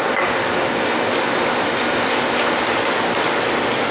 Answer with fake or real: real